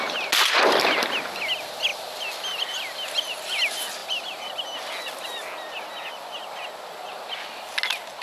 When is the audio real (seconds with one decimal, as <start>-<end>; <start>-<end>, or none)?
0.0-8.2